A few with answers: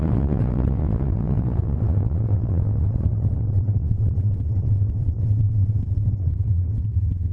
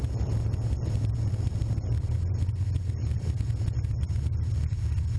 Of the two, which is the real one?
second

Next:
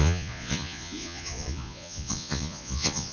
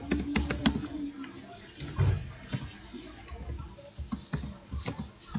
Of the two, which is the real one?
second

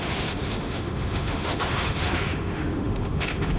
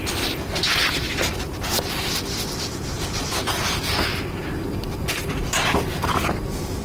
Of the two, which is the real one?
second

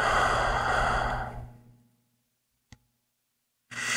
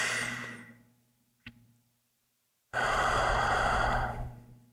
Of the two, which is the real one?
first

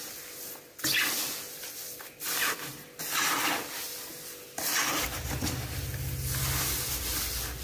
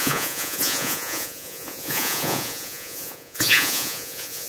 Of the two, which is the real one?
first